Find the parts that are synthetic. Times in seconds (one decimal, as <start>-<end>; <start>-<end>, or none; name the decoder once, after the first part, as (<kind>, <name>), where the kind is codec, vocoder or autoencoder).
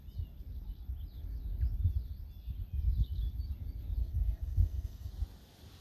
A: 4.0-5.1 (codec, SNAC)